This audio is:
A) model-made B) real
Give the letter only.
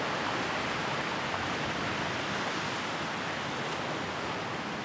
B